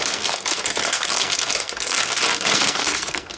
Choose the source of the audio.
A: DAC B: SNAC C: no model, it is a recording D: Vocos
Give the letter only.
B